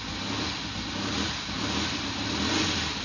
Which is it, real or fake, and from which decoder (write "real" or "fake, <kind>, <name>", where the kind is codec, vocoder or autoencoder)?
real